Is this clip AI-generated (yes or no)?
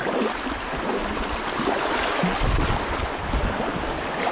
no